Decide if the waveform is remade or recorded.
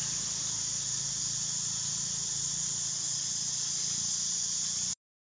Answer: recorded